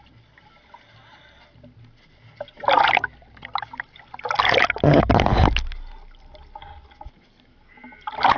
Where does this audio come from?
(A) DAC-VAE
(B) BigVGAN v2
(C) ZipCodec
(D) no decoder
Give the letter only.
D